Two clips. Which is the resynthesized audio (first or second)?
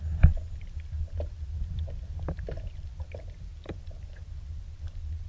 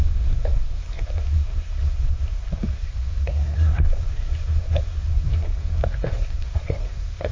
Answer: second